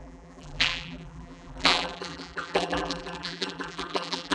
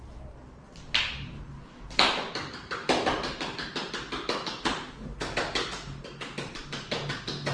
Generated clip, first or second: first